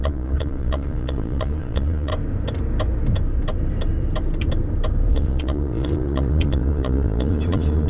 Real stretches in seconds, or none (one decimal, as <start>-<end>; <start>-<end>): 2.1-5.1